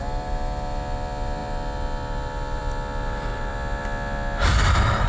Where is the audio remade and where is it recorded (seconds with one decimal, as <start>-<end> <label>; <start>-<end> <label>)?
0.0-3.3 recorded; 3.3-3.8 remade; 3.8-5.1 recorded